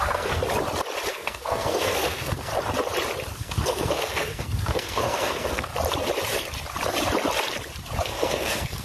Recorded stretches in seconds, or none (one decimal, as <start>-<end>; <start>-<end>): 0.4-1.1; 2.5-3.3; 5.7-8.0

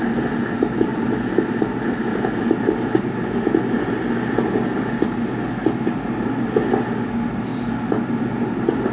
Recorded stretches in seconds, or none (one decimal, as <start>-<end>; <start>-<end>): 0.0-8.9

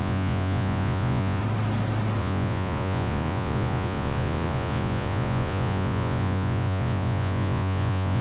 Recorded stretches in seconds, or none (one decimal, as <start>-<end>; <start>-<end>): 1.4-2.2

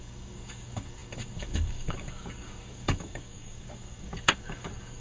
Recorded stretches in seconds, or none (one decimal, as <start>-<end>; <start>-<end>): none

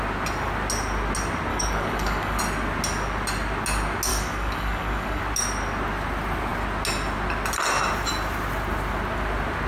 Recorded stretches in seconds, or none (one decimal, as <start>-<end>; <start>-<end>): 0.0-1.5; 2.4-4.1; 5.2-9.7

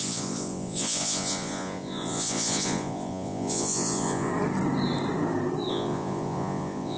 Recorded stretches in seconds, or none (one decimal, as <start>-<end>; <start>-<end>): 4.3-5.7